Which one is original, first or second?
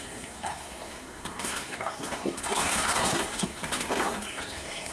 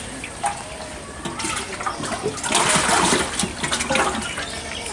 second